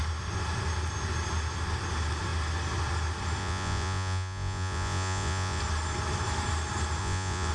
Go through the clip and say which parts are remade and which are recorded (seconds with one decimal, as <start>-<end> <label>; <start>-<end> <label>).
0.0-3.4 recorded; 3.4-5.6 remade; 5.6-7.0 recorded; 7.0-7.5 remade